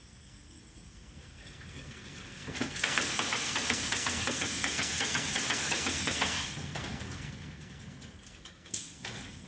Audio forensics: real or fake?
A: fake